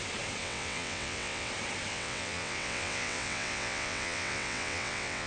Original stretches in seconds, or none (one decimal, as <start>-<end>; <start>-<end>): 0.0-0.4; 1.5-1.9